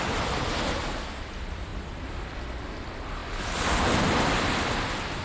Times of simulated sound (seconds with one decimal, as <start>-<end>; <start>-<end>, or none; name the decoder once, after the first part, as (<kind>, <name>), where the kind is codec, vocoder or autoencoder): none